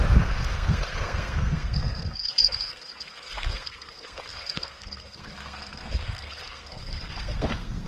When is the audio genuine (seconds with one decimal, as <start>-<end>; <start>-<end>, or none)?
none